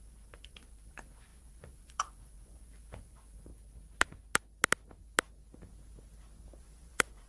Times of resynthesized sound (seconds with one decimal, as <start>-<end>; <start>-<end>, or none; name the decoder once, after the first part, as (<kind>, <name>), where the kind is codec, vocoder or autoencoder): 0.0-3.5 (vocoder, Vocos); 6.6-7.3